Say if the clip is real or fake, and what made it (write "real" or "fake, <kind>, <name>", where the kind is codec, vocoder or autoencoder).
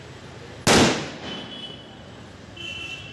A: real